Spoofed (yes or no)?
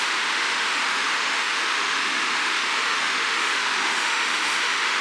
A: yes